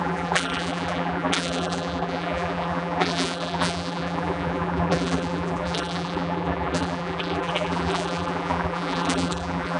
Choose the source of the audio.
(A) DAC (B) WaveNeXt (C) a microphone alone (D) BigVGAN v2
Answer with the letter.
D